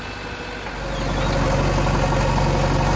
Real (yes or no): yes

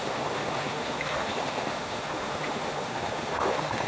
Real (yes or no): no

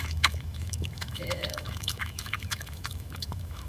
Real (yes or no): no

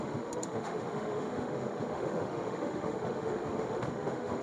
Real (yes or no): no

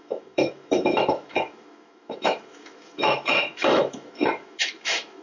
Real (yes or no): no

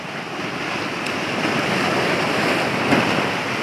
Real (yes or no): yes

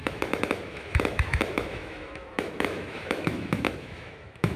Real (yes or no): no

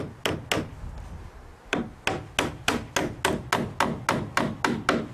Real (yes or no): yes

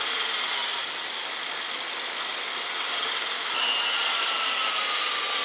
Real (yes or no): yes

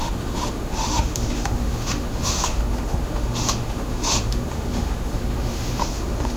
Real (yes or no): no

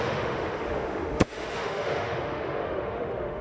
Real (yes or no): no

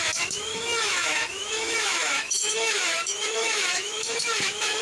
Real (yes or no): no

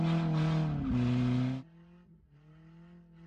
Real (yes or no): yes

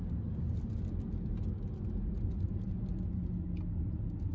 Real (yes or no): yes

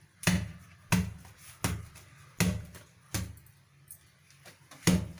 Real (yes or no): yes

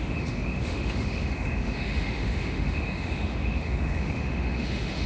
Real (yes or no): no